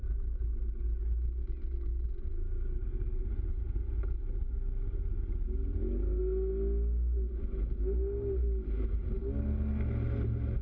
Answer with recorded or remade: recorded